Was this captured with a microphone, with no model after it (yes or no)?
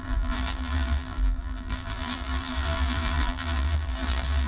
no